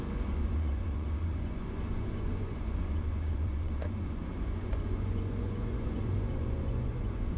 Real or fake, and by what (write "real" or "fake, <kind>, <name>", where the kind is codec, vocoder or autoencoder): fake, vocoder, Vocos